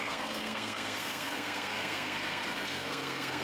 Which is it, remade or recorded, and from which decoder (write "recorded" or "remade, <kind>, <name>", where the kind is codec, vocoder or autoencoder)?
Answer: remade, codec, SNAC